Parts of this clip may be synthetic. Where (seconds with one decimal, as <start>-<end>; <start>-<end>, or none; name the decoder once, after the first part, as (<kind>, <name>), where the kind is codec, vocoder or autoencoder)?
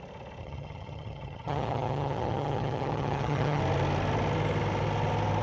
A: 0.4-3.6 (vocoder, HiFi-GAN)